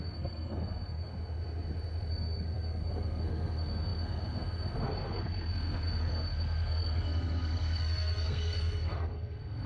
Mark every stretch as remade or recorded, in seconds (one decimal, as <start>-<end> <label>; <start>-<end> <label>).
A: 0.0-1.1 remade; 1.1-2.1 recorded; 2.1-9.7 remade